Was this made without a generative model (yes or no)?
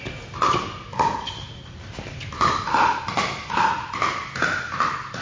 yes